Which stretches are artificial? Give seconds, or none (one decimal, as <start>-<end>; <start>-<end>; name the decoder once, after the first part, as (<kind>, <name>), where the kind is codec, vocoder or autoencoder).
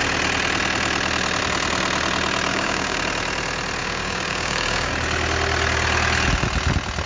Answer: 2.5-3.0 (codec, DAC); 3.8-4.9